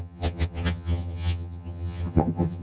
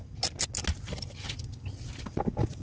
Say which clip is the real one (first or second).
second